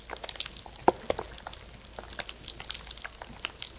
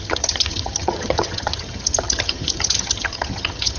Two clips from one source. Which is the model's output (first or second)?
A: second